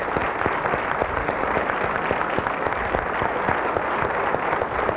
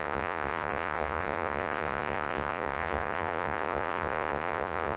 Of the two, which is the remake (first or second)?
second